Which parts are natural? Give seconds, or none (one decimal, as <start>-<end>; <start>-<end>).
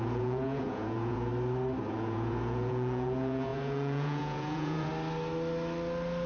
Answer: 1.3-1.9; 4.9-6.3